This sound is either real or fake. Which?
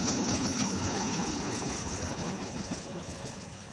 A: fake